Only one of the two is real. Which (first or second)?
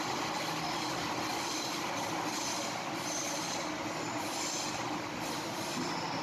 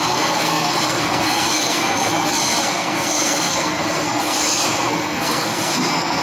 first